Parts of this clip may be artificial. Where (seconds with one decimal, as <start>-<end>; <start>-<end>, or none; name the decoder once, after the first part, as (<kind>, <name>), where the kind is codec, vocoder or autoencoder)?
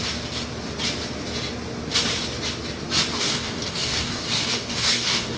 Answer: 3.2-5.4 (codec, DAC)